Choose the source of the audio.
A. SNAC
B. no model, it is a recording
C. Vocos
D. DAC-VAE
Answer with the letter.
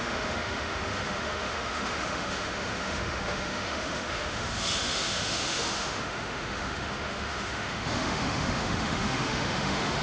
D